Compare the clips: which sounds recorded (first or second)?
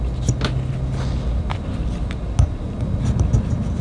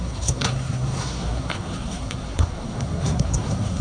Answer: first